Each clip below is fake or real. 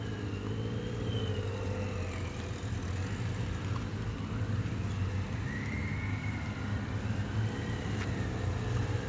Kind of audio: real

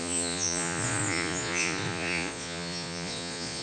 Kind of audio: fake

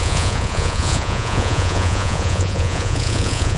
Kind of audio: fake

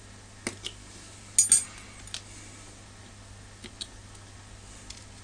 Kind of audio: real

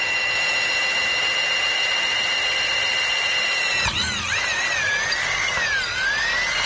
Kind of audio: real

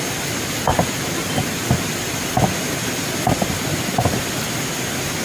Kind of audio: real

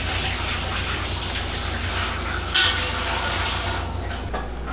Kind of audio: real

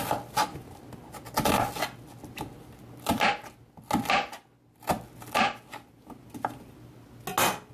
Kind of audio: real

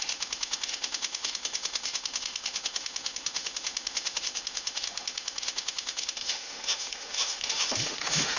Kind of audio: fake